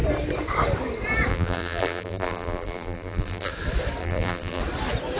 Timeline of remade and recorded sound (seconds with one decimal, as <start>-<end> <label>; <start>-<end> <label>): 0.0-1.3 recorded; 1.3-3.5 remade; 3.5-4.0 recorded; 4.0-4.6 remade; 4.6-5.2 recorded